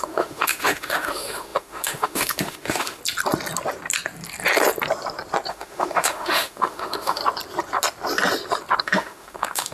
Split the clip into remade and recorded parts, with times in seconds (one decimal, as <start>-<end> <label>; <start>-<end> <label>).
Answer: 0.0-3.0 remade; 3.0-5.5 recorded; 5.5-7.2 remade; 7.2-8.8 recorded; 8.8-9.7 remade